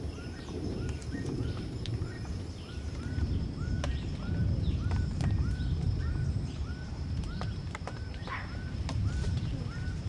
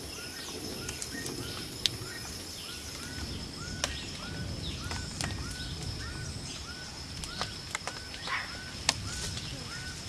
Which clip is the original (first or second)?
second